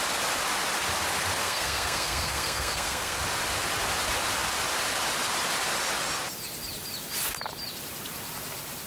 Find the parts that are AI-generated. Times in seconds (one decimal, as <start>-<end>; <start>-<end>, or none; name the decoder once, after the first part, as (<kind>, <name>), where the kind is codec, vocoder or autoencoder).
1.4-3.2 (codec, SNAC)